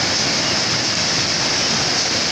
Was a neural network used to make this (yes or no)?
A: no